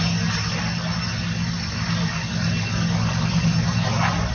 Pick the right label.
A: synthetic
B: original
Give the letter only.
B